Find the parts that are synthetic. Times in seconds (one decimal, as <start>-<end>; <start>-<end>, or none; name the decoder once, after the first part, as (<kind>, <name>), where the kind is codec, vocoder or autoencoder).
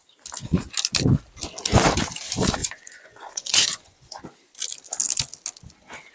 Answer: 2.6-4.2 (vocoder, Vocos)